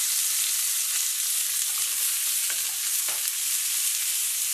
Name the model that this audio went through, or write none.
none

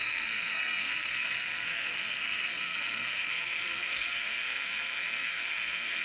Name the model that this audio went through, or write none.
codec, SNAC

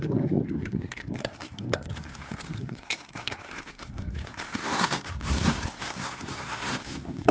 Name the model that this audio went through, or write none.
codec, SNAC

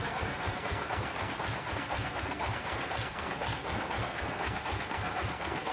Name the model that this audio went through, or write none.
codec, SNAC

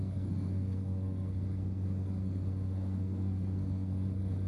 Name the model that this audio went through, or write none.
codec, SNAC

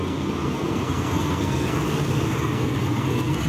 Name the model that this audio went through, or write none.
codec, SNAC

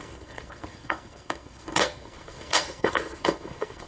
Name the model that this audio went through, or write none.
codec, SNAC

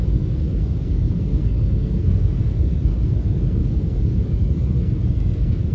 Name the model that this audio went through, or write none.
codec, SNAC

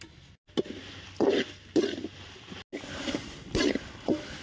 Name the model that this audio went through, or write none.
none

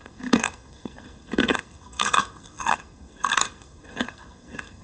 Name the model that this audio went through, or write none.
codec, SNAC